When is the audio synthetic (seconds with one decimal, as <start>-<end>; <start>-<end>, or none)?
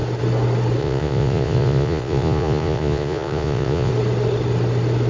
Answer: 0.8-3.9